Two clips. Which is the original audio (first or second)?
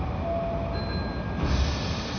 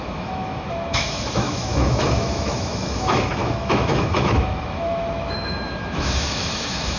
first